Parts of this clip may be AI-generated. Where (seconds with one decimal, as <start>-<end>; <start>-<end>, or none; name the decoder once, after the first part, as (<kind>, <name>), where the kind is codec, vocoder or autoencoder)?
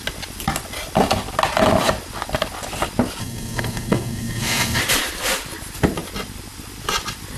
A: 3.2-4.8 (codec, SNAC)